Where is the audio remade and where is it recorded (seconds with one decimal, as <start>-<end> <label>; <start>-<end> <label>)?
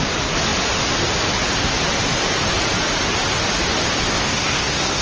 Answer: 0.0-4.1 recorded; 4.1-5.0 remade